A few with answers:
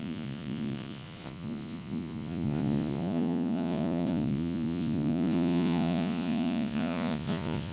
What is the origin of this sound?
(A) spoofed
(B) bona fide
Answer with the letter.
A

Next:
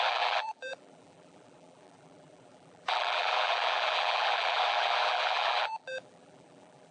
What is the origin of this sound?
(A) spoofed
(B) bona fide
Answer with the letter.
A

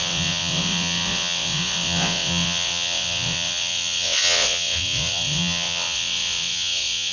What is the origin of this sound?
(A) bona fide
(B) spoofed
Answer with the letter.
B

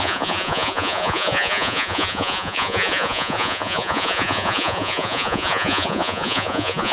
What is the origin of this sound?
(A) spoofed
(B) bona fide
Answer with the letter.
A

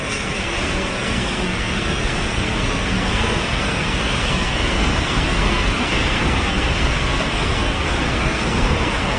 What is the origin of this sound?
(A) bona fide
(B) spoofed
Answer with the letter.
B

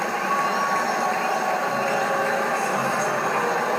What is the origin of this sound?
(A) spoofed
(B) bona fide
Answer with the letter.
B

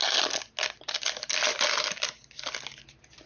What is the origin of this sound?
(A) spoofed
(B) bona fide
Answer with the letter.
B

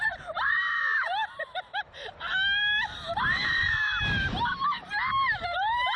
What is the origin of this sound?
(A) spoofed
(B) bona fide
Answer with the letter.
A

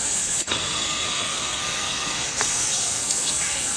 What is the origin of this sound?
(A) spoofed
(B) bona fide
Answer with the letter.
A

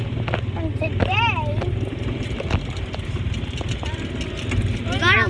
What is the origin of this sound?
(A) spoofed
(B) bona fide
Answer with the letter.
B